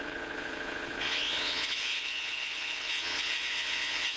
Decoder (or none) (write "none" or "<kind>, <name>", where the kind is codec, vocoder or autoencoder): vocoder, Vocos